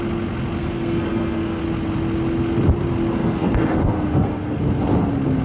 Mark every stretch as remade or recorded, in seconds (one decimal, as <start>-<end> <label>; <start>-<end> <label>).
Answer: 0.0-0.6 recorded; 0.6-1.6 remade; 1.6-3.2 recorded; 3.2-4.6 remade; 4.6-5.4 recorded